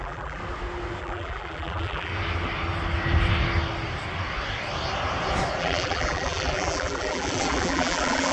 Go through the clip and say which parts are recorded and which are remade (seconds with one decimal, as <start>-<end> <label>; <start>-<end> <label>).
0.0-0.4 remade; 0.4-1.0 recorded; 1.0-2.1 remade; 2.1-5.6 recorded; 5.6-8.3 remade